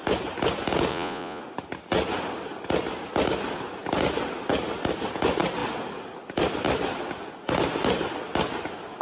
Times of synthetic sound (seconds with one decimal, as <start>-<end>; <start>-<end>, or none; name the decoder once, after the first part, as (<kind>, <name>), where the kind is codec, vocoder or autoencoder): 0.9-1.4 (vocoder, Vocos)